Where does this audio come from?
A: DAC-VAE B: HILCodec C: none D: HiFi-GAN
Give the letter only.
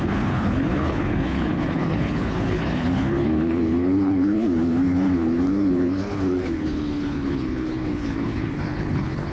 B